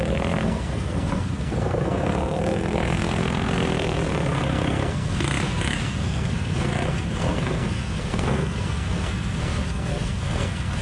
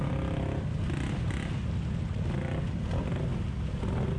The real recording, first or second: second